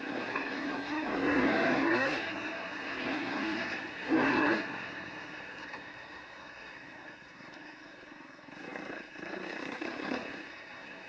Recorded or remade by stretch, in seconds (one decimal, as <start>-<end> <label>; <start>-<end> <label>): 0.0-11.1 remade